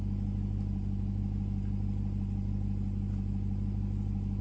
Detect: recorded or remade recorded